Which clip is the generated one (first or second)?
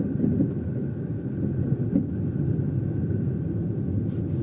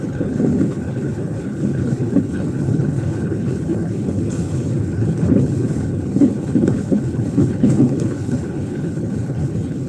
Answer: second